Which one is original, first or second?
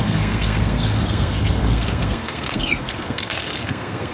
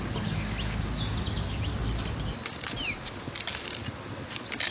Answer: second